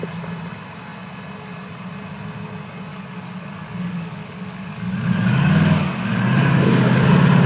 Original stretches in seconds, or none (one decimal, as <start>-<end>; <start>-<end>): 0.0-2.9; 7.1-7.5